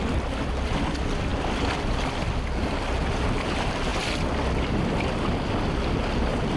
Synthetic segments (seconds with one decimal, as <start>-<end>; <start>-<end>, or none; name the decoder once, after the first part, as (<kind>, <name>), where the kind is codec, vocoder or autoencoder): none

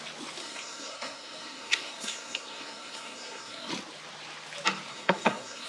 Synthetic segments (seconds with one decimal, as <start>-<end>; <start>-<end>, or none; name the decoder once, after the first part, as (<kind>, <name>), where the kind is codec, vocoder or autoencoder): 0.4-3.7 (codec, SNAC); 4.9-5.7

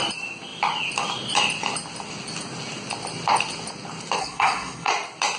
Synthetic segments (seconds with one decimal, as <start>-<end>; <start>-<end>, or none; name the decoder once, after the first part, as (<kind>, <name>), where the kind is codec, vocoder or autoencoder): 4.2-4.9 (codec, SNAC)

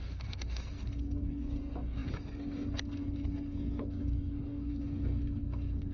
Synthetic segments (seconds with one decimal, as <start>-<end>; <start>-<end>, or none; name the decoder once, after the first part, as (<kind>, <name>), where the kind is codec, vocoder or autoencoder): 0.0-5.9 (codec, SNAC)

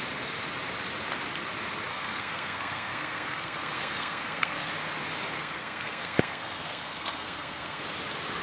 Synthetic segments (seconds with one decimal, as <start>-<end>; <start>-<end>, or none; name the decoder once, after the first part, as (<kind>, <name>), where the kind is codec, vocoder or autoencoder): 1.9-4.7 (codec, SNAC); 5.4-7.8

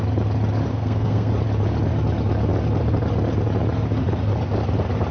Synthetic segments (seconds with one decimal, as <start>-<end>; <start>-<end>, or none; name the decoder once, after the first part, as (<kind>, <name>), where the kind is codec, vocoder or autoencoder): 0.7-1.3 (codec, SNAC)

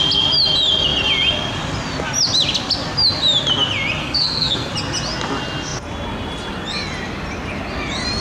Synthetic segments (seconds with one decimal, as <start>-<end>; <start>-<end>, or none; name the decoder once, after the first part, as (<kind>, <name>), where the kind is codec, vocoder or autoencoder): 4.0-4.7 (codec, SNAC)

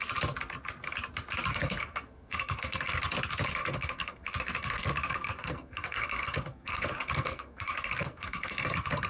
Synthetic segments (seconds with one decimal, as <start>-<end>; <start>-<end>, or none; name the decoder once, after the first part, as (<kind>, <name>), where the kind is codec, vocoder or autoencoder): 1.5-3.0 (codec, SNAC); 3.6-9.1